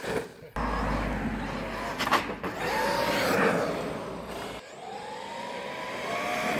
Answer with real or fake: real